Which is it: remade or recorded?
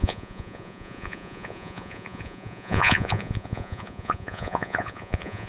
remade